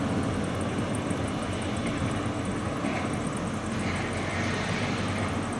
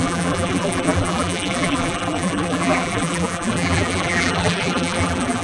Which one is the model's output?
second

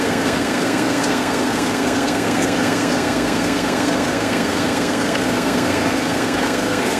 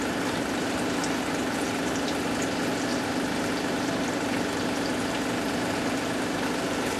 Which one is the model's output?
first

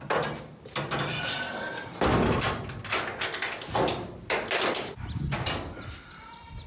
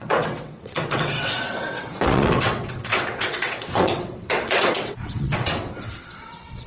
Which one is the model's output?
second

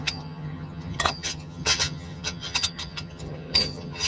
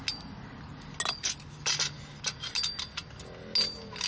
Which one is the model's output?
first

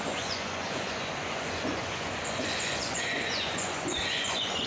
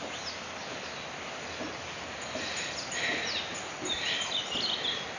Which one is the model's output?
first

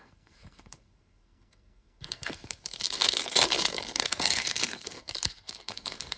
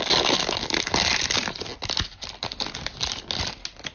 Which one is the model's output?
first